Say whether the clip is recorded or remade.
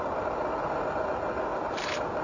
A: recorded